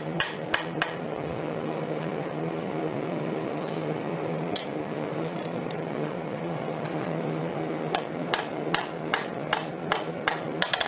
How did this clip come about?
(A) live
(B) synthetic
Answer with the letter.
B